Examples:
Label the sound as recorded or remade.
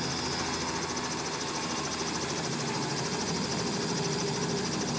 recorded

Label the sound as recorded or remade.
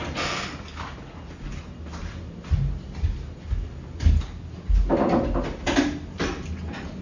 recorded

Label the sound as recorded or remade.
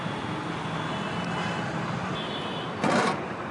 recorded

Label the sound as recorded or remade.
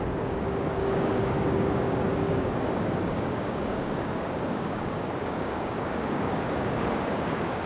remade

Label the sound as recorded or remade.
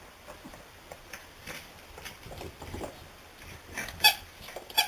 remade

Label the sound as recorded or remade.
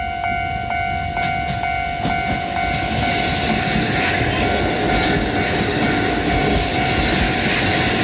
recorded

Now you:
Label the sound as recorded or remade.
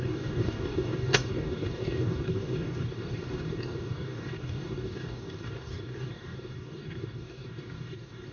remade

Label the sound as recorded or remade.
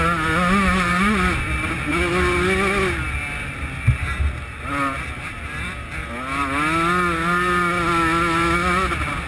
recorded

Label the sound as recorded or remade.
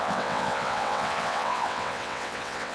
remade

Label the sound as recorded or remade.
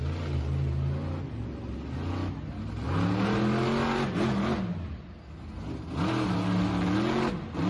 recorded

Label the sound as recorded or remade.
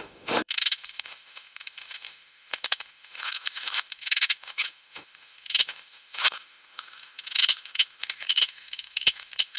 remade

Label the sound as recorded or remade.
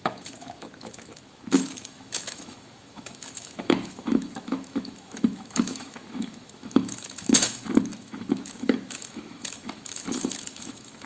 remade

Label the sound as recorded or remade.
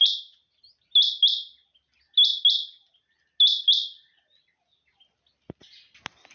recorded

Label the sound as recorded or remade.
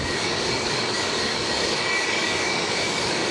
remade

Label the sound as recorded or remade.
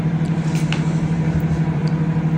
remade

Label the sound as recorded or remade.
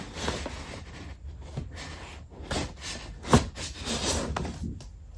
recorded